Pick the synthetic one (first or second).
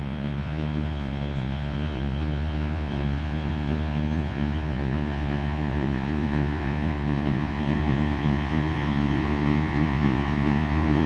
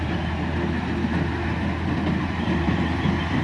first